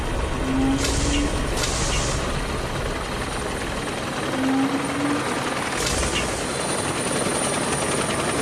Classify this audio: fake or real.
real